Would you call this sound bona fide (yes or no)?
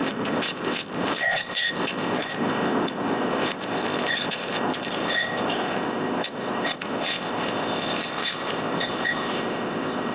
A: no